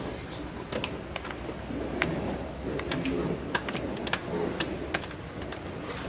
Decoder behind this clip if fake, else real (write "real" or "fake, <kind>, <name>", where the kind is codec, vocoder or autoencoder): real